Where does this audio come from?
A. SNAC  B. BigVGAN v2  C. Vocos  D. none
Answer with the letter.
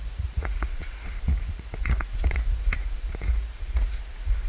C